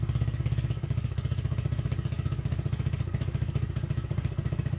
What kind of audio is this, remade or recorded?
remade